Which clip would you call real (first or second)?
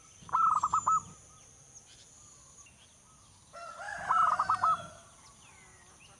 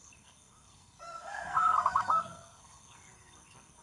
first